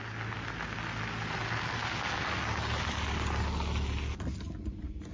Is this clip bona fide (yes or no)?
yes